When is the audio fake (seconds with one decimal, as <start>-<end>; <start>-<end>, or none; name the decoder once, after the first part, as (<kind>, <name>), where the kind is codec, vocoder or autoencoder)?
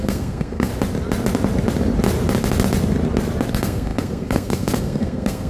0.0-0.7 (codec, SNAC); 3.5-5.5